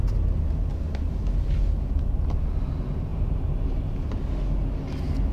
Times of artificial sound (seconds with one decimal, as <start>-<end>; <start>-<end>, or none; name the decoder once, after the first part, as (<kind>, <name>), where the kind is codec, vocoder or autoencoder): 3.1-4.2 (vocoder, BigVGAN v2)